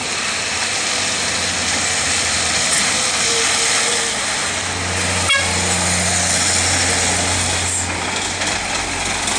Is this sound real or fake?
real